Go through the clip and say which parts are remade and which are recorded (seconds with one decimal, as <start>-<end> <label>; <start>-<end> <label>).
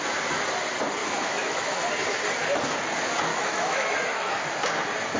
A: 0.0-1.0 recorded; 1.0-1.8 remade; 1.8-3.3 recorded; 3.3-4.4 remade; 4.4-5.2 recorded